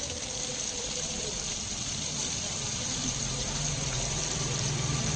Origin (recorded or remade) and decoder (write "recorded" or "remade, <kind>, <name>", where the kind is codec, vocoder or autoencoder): remade, vocoder, BigVGAN v2